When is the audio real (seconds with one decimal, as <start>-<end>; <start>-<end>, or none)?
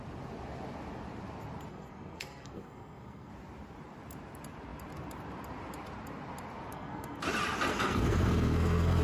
0.0-1.7; 3.3-6.7; 7.2-7.7